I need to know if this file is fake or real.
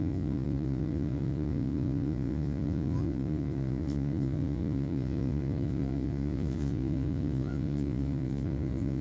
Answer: fake